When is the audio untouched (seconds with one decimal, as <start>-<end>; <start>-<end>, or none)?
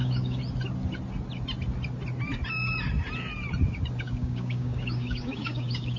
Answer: 0.4-4.0